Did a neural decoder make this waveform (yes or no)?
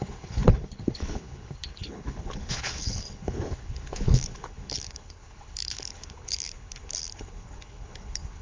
yes